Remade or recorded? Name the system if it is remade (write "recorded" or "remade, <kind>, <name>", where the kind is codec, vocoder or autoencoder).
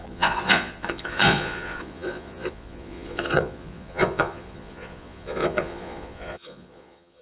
remade, vocoder, Vocos